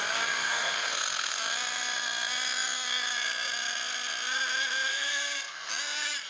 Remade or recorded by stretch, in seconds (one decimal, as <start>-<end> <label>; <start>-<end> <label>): 0.0-0.4 recorded; 0.4-1.4 remade; 1.4-4.9 recorded; 4.9-5.7 remade; 5.7-6.3 recorded